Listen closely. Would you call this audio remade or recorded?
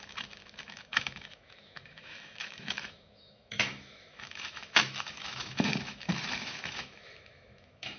remade